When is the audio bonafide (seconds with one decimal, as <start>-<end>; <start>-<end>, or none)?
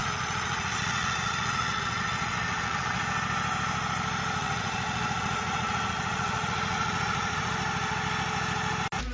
3.0-4.4; 7.5-9.1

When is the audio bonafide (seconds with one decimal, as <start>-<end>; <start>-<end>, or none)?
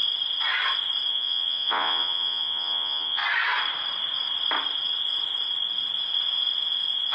0.0-1.1; 3.2-7.1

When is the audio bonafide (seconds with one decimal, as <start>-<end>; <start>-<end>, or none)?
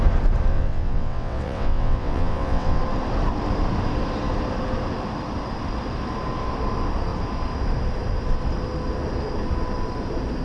0.0-0.5; 2.8-10.4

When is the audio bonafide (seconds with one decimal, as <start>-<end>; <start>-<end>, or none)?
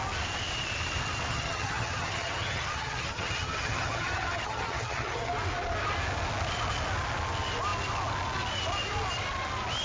0.0-1.3; 5.3-9.8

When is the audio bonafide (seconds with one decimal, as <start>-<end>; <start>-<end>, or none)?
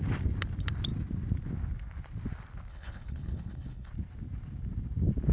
0.0-2.7; 3.9-5.3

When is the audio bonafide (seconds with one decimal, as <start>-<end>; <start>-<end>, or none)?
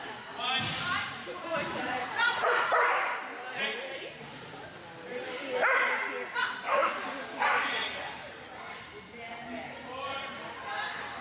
0.0-1.6; 2.7-11.2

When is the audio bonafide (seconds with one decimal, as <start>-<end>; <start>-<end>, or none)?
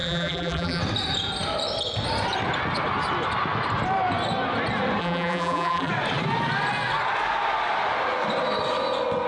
0.8-5.0; 5.9-9.3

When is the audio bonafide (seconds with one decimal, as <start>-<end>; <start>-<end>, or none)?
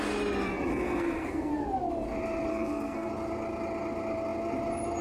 0.0-0.7; 1.5-2.5; 3.1-5.0